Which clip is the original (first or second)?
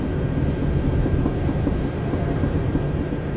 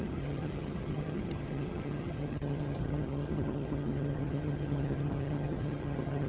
first